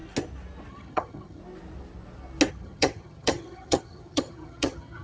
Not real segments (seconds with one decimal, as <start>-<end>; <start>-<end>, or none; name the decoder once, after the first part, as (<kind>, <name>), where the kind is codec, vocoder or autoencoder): 0.7-1.4 (vocoder, HiFi-GAN); 2.5-5.0